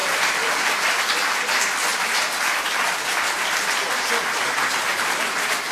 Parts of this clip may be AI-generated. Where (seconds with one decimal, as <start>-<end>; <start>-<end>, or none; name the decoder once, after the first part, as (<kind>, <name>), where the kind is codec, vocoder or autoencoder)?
0.0-0.8 (vocoder, BigVGAN v2); 1.9-4.4; 4.9-5.7